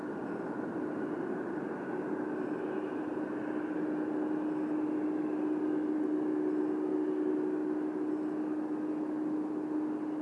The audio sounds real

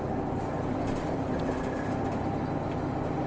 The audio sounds real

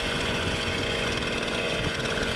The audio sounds fake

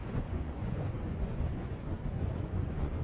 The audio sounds fake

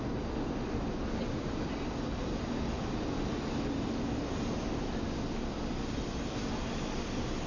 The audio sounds real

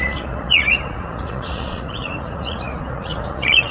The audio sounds fake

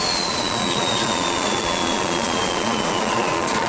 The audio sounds fake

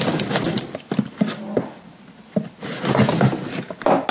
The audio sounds real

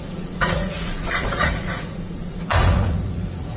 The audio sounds fake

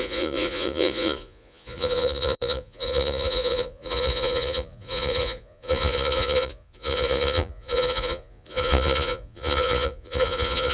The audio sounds fake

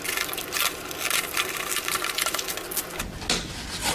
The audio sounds real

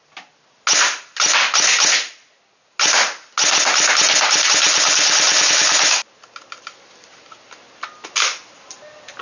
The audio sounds real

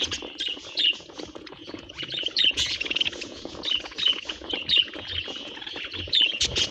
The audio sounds fake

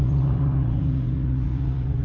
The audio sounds fake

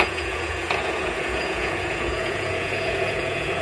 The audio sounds fake